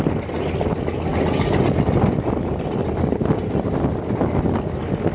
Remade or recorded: recorded